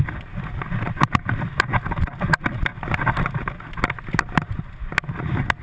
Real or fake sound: real